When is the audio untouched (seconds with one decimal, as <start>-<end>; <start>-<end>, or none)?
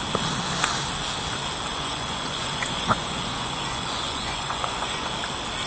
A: 0.0-1.7; 5.1-5.7